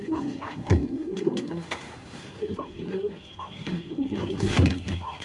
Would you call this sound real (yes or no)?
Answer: no